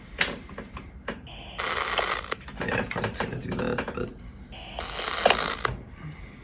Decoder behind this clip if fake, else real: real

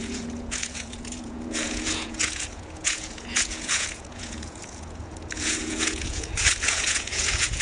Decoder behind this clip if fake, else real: fake, vocoder, Vocos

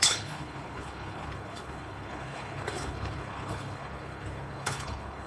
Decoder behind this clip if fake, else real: fake, codec, HILCodec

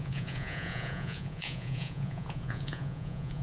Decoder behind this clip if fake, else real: fake, vocoder, Vocos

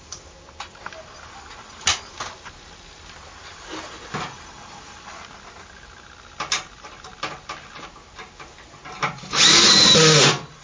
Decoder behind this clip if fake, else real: real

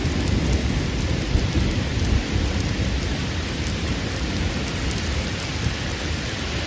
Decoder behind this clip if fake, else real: real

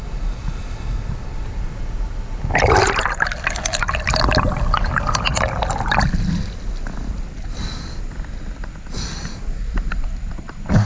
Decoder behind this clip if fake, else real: real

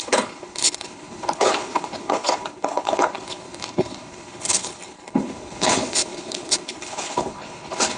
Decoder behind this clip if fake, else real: fake, codec, HILCodec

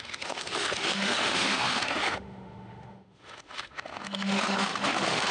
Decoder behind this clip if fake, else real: fake, autoencoder, DAC-VAE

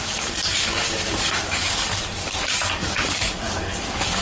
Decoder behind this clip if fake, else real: fake, codec, DAC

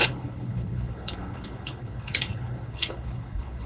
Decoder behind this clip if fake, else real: fake, codec, HILCodec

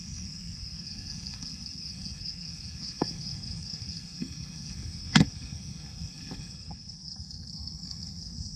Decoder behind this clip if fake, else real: fake, codec, SNAC